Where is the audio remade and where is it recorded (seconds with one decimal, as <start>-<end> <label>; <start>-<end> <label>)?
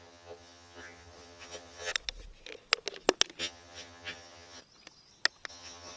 0.0-1.9 remade; 1.9-3.4 recorded; 3.4-4.6 remade; 4.6-5.5 recorded; 5.5-6.0 remade